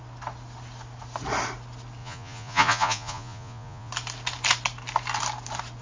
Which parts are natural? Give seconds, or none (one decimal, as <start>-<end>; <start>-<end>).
0.0-2.0; 3.9-5.8